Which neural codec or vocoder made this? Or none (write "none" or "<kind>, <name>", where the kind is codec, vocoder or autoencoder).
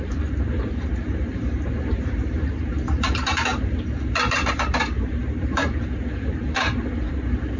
vocoder, BigVGAN v2